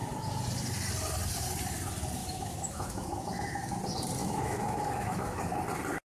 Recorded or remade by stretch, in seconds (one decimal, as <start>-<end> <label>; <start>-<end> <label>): 0.0-2.2 recorded; 2.2-3.8 remade; 3.8-4.2 recorded; 4.2-5.4 remade; 5.4-6.1 recorded